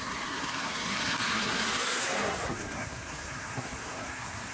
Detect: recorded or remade remade